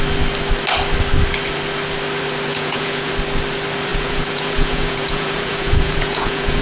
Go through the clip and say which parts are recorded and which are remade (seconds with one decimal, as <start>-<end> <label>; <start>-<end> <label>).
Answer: 0.0-2.5 recorded; 2.5-3.1 remade; 3.1-3.9 recorded; 3.9-6.6 remade